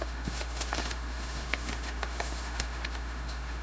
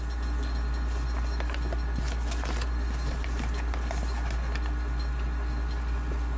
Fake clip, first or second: first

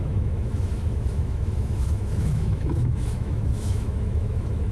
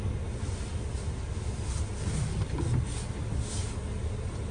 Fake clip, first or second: first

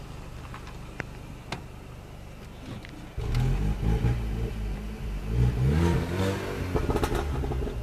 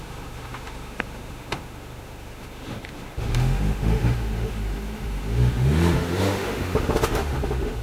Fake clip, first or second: second